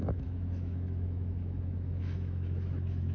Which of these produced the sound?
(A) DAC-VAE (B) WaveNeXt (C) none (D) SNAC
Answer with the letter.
A